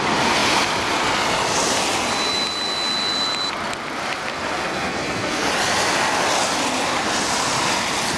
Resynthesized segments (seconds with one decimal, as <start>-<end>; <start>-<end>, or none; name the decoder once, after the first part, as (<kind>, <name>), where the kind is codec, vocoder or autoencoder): 4.3-5.5 (codec, SNAC)